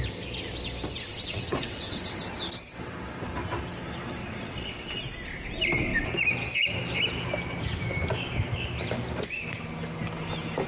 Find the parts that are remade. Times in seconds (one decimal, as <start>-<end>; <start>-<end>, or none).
1.1-2.2; 4.2-5.0